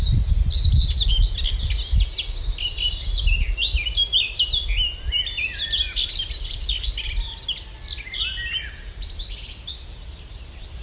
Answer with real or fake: real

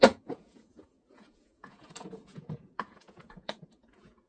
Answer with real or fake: fake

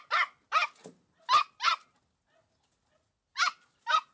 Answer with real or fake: real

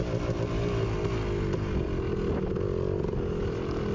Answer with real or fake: real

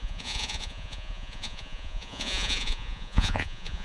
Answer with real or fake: fake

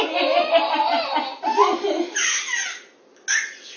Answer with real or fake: real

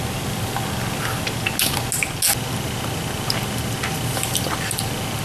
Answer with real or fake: real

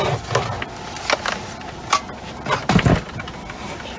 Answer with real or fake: real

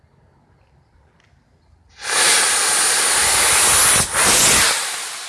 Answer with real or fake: real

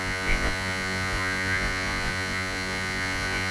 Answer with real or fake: fake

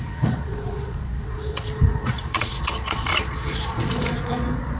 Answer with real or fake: fake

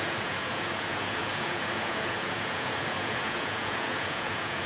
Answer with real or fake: fake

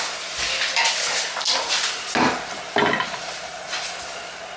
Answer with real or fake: real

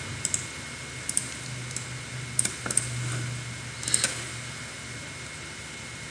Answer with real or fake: real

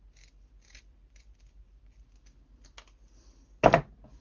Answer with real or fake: real